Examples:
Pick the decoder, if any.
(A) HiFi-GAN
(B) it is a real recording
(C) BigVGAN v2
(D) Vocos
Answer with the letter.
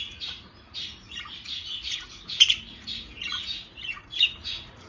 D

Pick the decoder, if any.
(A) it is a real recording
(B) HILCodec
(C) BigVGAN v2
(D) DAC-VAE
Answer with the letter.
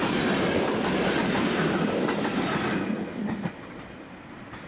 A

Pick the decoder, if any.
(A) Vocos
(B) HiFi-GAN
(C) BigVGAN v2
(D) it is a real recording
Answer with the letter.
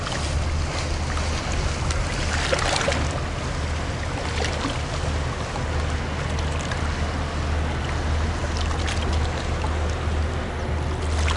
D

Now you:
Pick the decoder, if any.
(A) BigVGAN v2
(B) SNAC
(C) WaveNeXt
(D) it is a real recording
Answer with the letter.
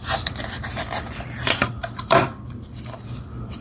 A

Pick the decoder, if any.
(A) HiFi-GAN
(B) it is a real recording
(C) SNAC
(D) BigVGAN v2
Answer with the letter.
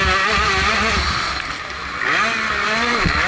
B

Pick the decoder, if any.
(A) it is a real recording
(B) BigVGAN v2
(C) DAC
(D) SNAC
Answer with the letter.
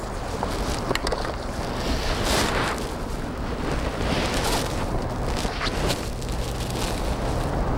A